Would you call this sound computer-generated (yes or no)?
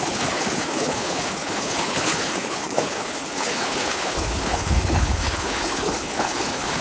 yes